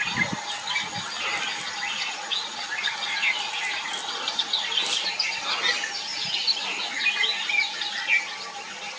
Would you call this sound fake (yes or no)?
no